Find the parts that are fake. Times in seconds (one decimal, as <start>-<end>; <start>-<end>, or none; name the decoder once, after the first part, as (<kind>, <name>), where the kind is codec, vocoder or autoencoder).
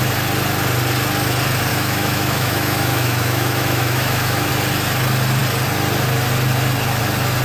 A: 1.7-4.5 (autoencoder, DAC-VAE)